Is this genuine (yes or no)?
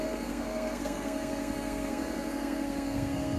no